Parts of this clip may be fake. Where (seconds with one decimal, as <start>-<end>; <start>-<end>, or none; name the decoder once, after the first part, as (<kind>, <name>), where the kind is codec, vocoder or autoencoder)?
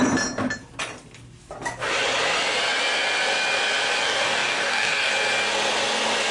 4.0-5.1 (codec, DAC)